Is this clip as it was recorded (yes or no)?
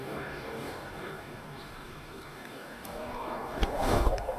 no